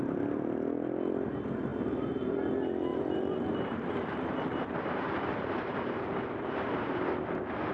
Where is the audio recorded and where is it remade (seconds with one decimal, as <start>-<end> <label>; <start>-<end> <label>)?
0.0-1.7 recorded; 1.7-2.5 remade; 2.5-2.9 recorded; 2.9-7.0 remade; 7.0-7.7 recorded